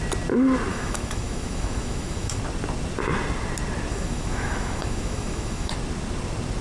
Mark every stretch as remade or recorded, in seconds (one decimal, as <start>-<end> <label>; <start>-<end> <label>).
0.0-0.7 recorded; 0.7-2.4 remade; 2.4-3.9 recorded; 3.9-5.7 remade; 5.7-6.6 recorded